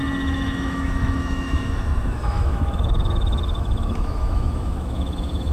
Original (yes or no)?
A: no